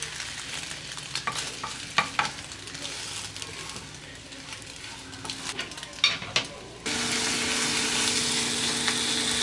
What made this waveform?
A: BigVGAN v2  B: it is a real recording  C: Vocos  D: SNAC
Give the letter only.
B